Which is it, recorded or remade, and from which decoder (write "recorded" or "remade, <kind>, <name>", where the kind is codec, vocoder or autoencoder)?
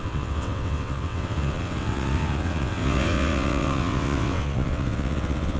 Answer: remade, vocoder, WaveNeXt